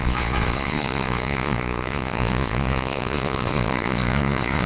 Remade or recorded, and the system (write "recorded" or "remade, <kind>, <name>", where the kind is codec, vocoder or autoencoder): remade, vocoder, Vocos